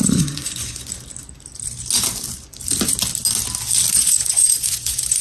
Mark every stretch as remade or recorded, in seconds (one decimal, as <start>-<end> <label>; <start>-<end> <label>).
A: 0.0-0.8 remade; 0.8-3.9 recorded; 3.9-5.2 remade